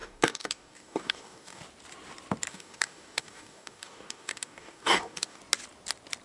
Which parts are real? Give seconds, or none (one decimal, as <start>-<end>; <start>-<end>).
1.6-2.5; 5.4-6.2